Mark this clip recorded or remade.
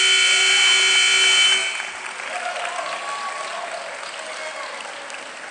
recorded